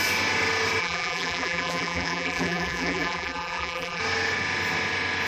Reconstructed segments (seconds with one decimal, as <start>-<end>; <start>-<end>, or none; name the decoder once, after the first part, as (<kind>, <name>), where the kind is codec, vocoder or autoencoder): 0.8-4.0 (vocoder, BigVGAN v2)